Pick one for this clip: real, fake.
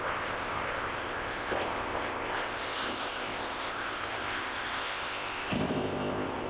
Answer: fake